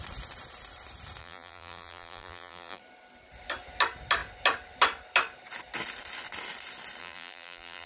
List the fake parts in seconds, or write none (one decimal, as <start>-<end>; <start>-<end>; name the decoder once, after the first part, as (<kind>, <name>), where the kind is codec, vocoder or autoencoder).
1.2-2.8 (vocoder, BigVGAN v2); 7.0-7.9